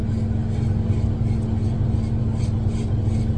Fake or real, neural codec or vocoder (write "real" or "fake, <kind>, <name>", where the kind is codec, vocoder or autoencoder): real